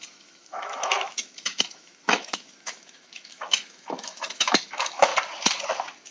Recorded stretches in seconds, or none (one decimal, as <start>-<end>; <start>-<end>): 5.1-6.1